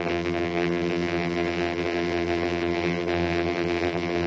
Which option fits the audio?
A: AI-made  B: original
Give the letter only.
A